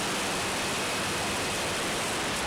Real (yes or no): yes